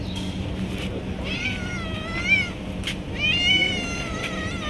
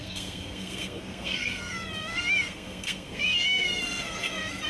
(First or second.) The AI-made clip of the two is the second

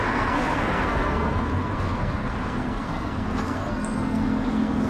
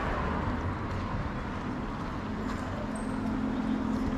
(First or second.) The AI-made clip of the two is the first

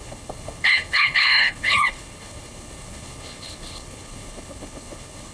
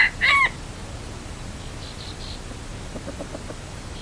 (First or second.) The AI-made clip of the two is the first